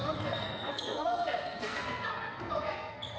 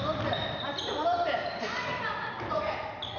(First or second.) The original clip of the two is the second